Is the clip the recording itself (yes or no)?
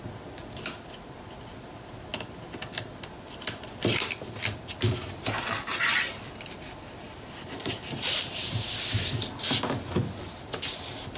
yes